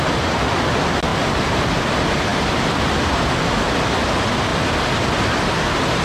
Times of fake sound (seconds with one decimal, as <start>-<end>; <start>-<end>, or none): 1.1-1.8